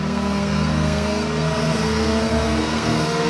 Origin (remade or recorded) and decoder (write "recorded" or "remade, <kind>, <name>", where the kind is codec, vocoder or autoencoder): remade, codec, SNAC